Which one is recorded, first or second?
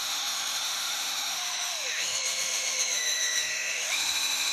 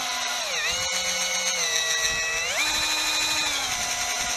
second